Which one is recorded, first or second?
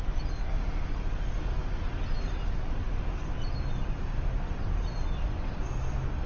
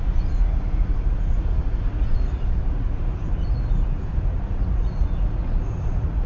first